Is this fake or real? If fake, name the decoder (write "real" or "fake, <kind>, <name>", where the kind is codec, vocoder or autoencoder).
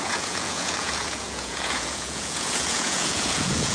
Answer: fake, vocoder, Vocos